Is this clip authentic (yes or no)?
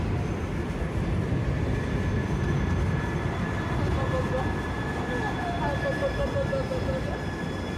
yes